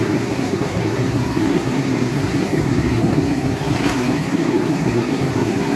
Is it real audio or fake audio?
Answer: fake